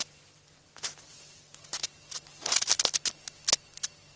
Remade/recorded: recorded